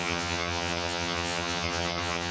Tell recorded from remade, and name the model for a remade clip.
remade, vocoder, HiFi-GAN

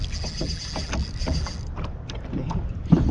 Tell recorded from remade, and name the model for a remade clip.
recorded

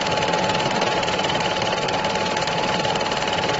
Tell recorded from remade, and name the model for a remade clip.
remade, vocoder, BigVGAN v2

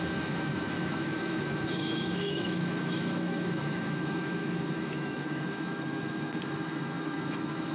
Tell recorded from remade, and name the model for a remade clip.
remade, autoencoder, DAC-VAE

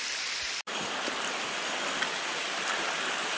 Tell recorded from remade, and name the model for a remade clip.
recorded